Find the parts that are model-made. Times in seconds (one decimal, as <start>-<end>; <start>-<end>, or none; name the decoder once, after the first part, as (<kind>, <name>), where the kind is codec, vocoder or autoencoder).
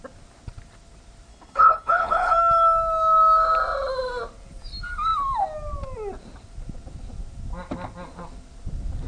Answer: 1.3-2.3 (codec, HILCodec)